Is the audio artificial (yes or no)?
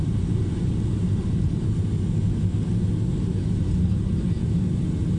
no